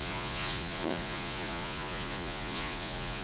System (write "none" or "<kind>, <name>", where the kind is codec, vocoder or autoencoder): vocoder, Vocos